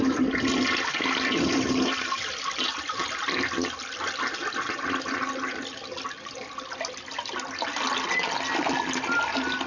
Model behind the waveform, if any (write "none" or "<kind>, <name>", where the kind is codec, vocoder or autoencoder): none